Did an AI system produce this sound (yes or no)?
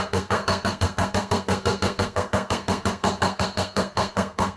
yes